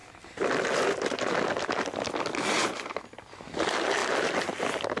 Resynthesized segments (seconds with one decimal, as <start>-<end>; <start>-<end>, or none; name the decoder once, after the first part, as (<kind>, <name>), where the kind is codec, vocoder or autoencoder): none

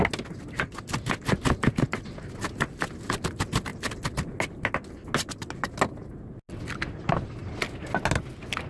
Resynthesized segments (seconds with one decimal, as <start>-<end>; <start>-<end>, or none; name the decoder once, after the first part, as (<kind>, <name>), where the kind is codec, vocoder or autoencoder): none

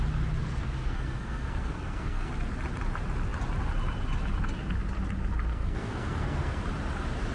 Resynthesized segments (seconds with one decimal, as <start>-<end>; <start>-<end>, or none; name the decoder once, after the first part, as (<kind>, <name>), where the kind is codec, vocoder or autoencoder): 0.4-2.3 (codec, SNAC); 5.5-6.6

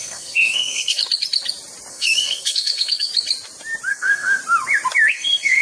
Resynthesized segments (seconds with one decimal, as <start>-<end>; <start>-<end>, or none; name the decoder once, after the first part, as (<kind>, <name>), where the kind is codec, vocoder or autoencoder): 0.0-1.0 (codec, SNAC); 1.9-3.1; 3.9-4.4; 5.1-5.6

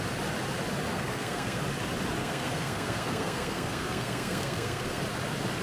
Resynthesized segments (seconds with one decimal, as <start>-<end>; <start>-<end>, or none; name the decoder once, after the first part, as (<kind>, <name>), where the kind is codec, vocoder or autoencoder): 0.9-1.6 (codec, SNAC); 2.2-5.0

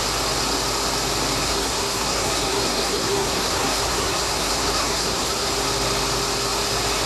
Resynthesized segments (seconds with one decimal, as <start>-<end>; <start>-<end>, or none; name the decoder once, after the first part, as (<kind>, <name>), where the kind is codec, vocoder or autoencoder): 1.4-5.5 (codec, SNAC)